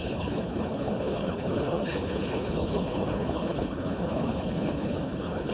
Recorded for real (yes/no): no